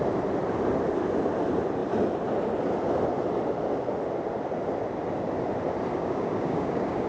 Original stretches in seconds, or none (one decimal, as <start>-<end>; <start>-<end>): 0.0-5.9